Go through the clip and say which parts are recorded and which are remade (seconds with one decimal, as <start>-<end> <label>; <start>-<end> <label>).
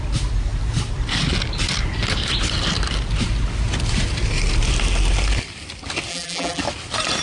0.0-6.1 recorded; 6.1-6.6 remade; 6.6-7.2 recorded